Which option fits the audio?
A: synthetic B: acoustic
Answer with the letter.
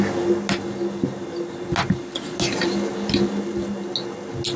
B